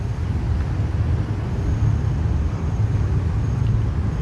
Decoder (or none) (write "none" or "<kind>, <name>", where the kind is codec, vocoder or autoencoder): none